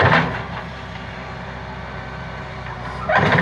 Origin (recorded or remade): remade